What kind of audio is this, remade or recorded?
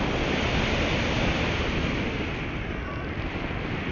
recorded